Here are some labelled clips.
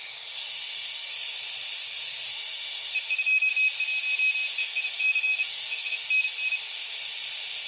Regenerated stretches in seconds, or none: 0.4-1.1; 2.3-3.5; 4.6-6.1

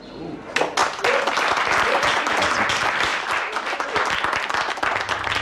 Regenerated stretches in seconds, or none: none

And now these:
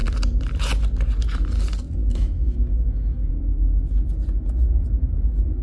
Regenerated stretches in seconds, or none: 2.0-3.3